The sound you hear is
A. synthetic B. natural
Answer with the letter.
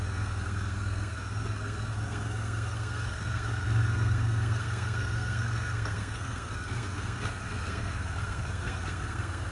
A